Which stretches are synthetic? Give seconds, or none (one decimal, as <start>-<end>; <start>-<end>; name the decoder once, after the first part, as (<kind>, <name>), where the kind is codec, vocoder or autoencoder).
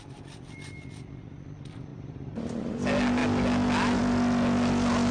1.9-2.4 (vocoder, BigVGAN v2)